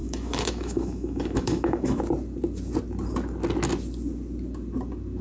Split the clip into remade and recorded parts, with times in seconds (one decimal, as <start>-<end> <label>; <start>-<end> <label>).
0.0-2.0 remade; 2.0-5.2 recorded